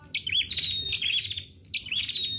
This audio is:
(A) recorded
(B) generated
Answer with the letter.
A